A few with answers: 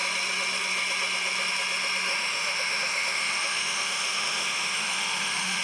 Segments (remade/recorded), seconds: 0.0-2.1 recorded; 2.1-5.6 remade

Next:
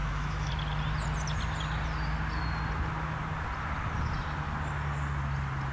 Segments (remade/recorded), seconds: 0.0-0.5 remade; 0.5-5.7 recorded

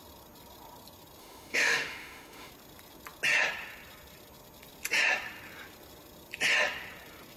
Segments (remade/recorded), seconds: 0.0-1.2 recorded; 1.2-2.5 remade; 2.5-7.4 recorded

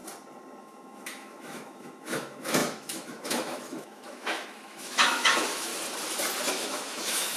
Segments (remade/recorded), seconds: 0.0-0.6 recorded; 0.6-5.7 remade; 5.7-6.5 recorded; 6.5-7.4 remade

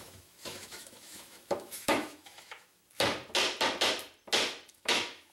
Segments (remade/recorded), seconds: 0.0-2.8 remade; 2.8-4.7 recorded; 4.7-5.3 remade

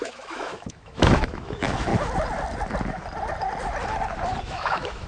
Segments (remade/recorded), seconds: 0.0-1.9 remade; 1.9-4.4 recorded; 4.4-5.1 remade

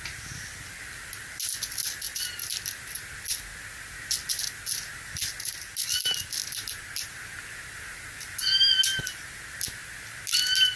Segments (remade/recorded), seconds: 0.0-10.8 recorded